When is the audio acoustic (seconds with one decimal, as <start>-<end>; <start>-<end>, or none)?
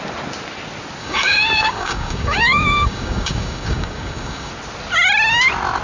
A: 0.0-1.0; 4.5-5.8